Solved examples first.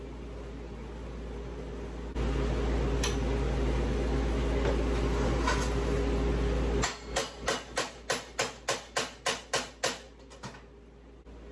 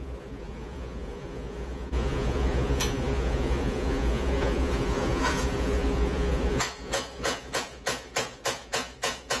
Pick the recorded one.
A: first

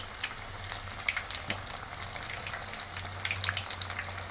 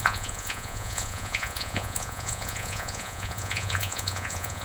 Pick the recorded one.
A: first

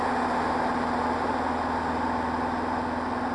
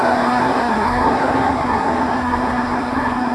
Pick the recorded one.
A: first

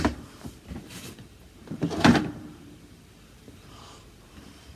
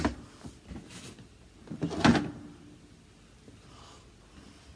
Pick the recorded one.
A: second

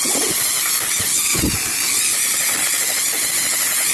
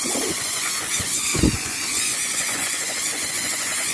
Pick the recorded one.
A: first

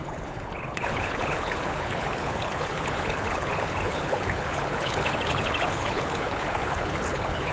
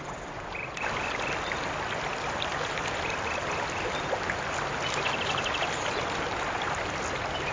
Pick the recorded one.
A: second